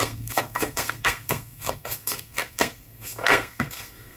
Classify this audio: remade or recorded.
remade